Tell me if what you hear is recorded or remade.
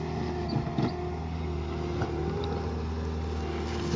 recorded